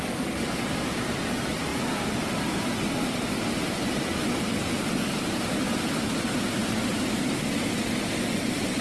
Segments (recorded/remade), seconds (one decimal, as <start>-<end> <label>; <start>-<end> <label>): 0.0-8.8 recorded